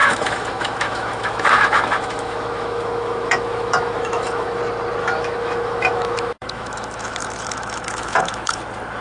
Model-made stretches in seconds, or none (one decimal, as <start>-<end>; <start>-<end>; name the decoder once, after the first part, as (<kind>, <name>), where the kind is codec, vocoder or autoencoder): 0.0-4.6 (autoencoder, DAC-VAE); 5.0-8.6